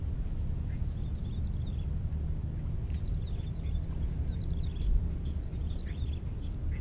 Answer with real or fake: real